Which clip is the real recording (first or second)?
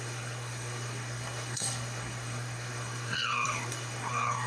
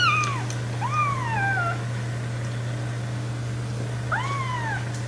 second